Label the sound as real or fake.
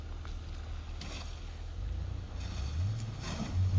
real